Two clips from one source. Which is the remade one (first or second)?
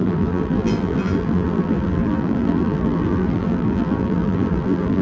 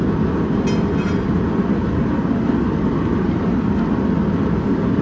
first